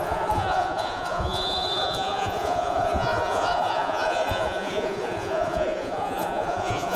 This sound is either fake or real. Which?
fake